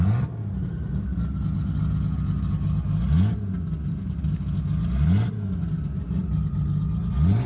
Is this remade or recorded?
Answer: recorded